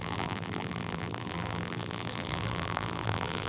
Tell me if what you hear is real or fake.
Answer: fake